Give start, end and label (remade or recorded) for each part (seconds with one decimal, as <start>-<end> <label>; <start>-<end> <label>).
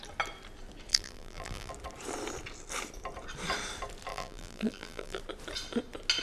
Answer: 0.0-0.9 recorded; 0.9-1.7 remade; 1.7-4.1 recorded; 4.1-5.2 remade; 5.2-6.2 recorded